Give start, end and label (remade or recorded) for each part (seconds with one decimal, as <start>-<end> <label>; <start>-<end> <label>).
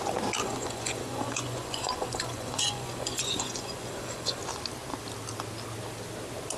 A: 0.0-0.4 recorded; 0.4-4.4 remade; 4.4-6.6 recorded